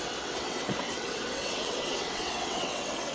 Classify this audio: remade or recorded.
remade